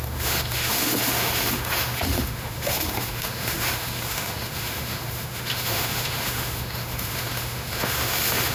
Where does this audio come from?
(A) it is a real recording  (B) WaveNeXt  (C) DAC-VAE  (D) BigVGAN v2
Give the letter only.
C